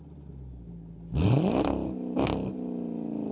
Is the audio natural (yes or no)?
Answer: yes